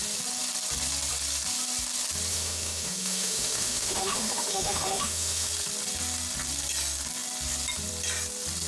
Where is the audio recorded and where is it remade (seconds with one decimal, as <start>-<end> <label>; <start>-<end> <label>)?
0.0-2.3 recorded; 2.3-5.5 remade; 5.5-8.7 recorded